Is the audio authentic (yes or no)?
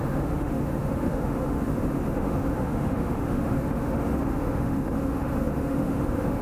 no